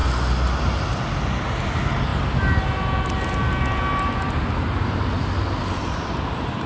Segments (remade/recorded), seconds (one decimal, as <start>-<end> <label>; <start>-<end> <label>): 0.0-6.7 recorded